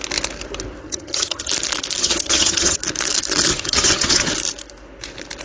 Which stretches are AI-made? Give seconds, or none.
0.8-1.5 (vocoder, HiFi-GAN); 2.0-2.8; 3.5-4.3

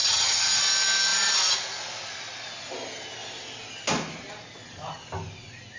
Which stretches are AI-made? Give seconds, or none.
0.0-0.6 (vocoder, HiFi-GAN)

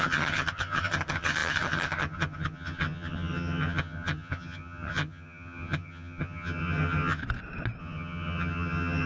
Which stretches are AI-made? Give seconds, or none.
0.0-7.2 (vocoder, HiFi-GAN); 7.8-9.1

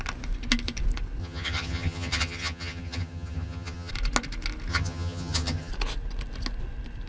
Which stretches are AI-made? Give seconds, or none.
1.2-3.9 (vocoder, HiFi-GAN); 4.7-5.7